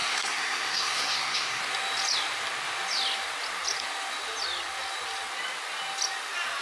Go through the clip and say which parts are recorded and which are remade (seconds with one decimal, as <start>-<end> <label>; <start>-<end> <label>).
0.0-1.6 remade; 1.6-6.6 recorded